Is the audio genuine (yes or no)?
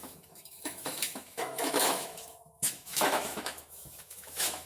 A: no